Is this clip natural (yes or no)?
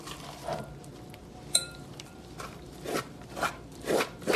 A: no